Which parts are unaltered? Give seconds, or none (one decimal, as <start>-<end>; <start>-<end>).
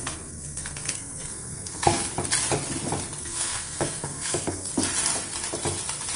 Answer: 2.1-3.2; 4.7-6.2